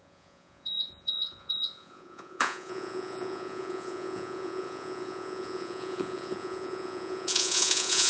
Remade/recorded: remade